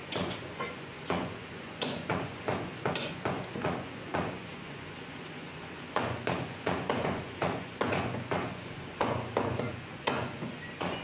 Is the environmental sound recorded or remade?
remade